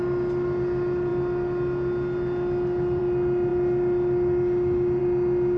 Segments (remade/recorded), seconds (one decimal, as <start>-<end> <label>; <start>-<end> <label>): 0.0-5.6 recorded